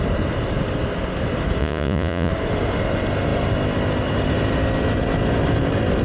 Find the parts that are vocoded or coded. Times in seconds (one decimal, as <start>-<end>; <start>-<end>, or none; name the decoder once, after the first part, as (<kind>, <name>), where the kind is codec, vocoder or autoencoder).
1.6-2.3 (vocoder, Vocos)